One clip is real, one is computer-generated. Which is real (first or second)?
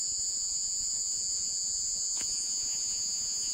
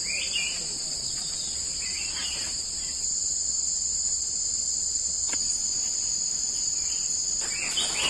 second